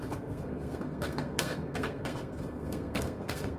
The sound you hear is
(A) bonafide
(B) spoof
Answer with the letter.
B